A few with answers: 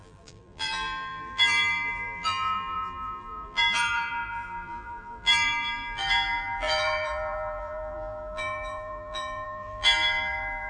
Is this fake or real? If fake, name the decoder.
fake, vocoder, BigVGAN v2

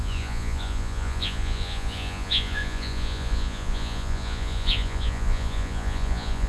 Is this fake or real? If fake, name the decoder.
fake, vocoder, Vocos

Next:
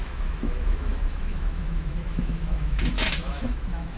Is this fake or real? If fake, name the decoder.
fake, autoencoder, DAC-VAE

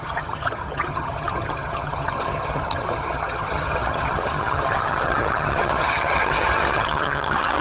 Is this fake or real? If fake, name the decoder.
fake, vocoder, HiFi-GAN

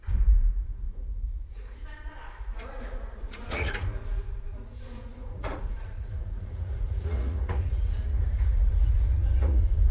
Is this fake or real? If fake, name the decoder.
fake, vocoder, Vocos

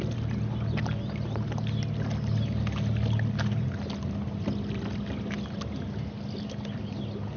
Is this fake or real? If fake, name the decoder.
real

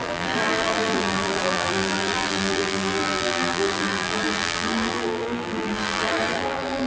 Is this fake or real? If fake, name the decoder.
fake, vocoder, BigVGAN v2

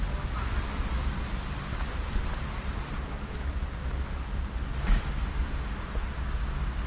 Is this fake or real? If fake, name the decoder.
real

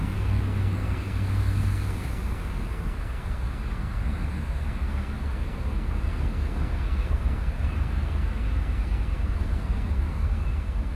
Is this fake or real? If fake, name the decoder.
fake, codec, SNAC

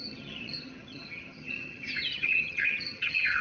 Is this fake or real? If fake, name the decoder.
fake, vocoder, HiFi-GAN